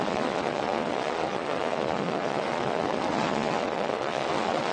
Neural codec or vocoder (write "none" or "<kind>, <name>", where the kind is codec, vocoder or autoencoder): vocoder, Vocos